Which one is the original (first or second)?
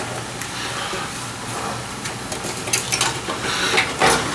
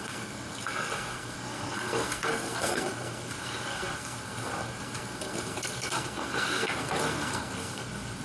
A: first